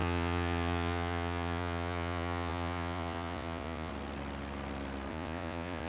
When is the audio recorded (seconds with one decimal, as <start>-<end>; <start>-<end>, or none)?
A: 3.9-5.1